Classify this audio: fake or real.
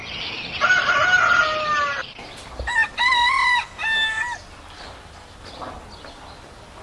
real